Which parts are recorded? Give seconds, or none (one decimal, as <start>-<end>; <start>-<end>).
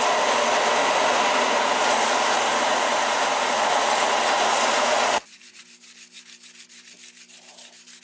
0.0-0.8; 5.6-8.0